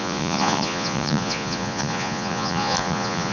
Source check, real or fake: fake